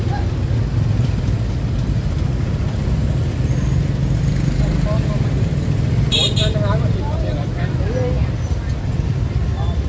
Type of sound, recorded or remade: recorded